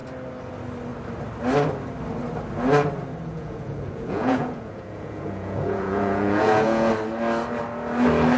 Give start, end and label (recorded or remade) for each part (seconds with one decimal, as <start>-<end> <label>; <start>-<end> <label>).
0.0-3.3 recorded; 3.3-6.9 remade; 6.9-8.4 recorded